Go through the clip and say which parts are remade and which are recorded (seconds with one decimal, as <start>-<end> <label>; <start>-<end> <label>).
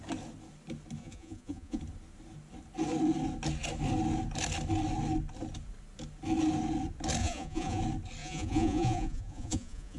0.0-1.0 recorded; 1.0-1.8 remade; 1.8-7.2 recorded; 7.2-7.8 remade; 7.8-8.2 recorded; 8.2-10.0 remade